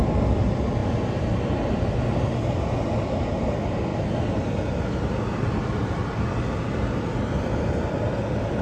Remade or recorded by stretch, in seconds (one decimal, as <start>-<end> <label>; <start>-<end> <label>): 0.0-8.6 recorded